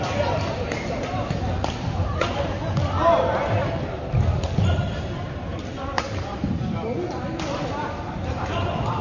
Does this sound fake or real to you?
real